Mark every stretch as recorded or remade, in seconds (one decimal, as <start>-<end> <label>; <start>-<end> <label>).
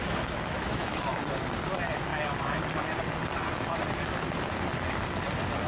0.0-1.2 remade; 1.2-5.7 recorded